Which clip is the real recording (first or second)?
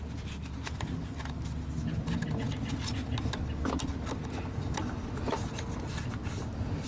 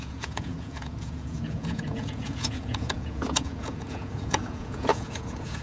first